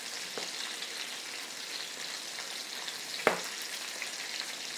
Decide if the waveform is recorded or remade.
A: recorded